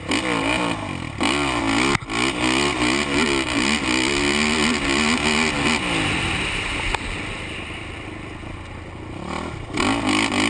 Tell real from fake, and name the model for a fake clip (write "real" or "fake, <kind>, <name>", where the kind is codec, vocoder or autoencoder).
real